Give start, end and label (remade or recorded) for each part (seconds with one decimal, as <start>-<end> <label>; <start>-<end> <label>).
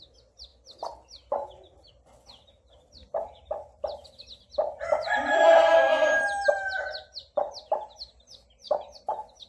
0.0-9.5 recorded